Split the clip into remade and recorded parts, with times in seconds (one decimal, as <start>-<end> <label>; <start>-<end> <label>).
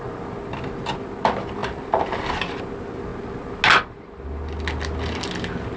0.0-5.8 recorded